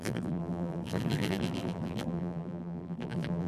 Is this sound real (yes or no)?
no